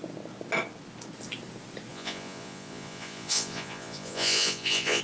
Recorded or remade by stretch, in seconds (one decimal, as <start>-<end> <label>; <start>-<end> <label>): 0.0-1.9 recorded; 1.9-5.0 remade